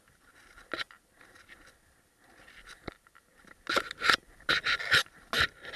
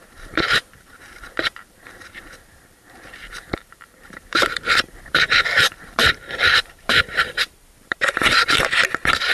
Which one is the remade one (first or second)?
second